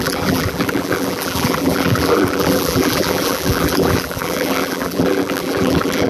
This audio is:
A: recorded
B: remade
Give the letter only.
B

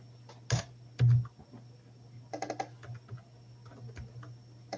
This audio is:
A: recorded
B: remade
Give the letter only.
A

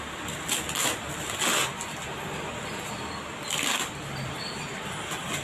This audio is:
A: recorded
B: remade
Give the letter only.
A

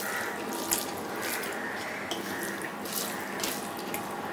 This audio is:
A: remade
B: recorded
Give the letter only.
B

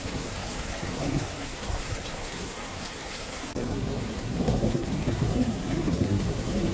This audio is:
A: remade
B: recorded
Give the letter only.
A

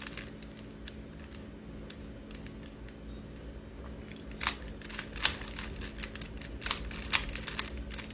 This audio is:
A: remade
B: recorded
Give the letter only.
B